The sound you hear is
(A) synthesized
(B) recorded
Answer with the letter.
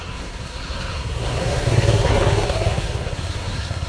A